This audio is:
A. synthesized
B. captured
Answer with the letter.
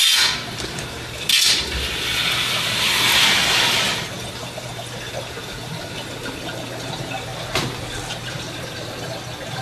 B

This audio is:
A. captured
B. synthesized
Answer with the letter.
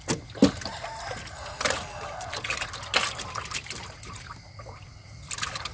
A